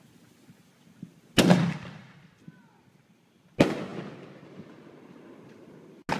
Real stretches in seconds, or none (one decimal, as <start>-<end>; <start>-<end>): 0.0-6.2